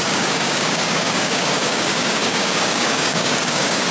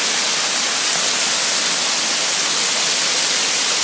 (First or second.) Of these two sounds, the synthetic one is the first